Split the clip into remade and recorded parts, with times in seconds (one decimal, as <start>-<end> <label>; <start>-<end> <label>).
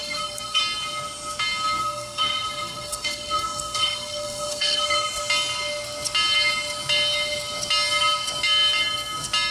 0.0-0.6 remade; 0.6-1.8 recorded; 1.8-5.2 remade; 5.2-9.5 recorded